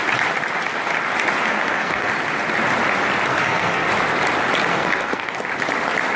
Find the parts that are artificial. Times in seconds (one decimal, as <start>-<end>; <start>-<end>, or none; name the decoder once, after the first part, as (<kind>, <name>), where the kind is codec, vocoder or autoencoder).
1.5-2.1 (codec, SNAC); 3.3-3.9; 4.7-5.3